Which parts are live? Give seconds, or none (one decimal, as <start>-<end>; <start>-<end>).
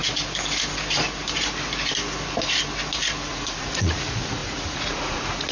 0.0-3.3